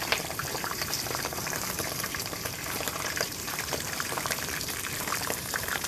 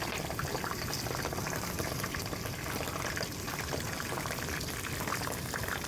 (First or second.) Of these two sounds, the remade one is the first